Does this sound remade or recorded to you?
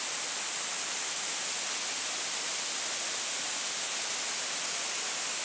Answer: recorded